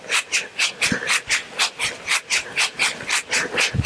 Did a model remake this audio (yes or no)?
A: no